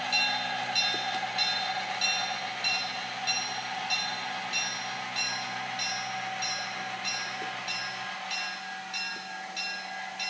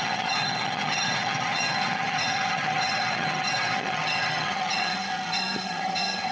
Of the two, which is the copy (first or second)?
second